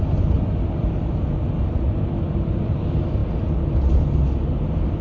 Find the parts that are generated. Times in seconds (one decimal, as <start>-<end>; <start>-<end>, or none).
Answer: none